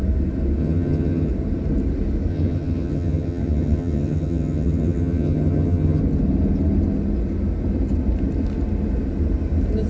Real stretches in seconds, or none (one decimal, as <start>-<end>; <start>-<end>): 0.0-0.6; 1.3-2.3; 6.0-9.9